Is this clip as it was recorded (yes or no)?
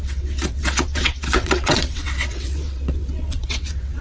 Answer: no